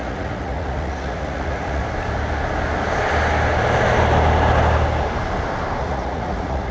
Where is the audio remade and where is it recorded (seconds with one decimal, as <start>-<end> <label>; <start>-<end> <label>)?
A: 0.0-1.8 remade; 1.8-5.8 recorded; 5.8-6.7 remade